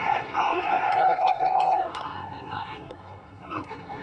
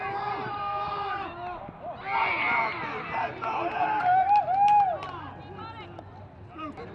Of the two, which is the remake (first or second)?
first